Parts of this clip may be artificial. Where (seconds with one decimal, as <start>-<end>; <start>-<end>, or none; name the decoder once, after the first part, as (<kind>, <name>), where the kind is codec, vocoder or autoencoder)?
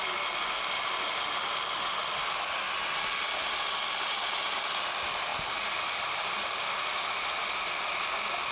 none